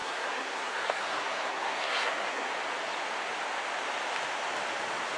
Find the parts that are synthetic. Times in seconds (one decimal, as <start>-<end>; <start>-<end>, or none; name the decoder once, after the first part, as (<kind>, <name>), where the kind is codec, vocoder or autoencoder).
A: 0.0-2.5 (codec, SNAC)